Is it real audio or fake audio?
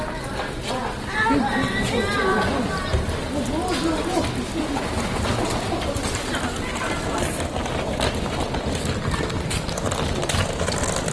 real